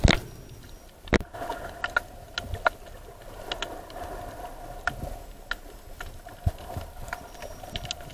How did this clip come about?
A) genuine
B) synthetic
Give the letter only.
A